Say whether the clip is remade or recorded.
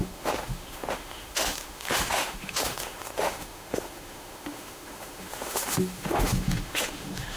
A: remade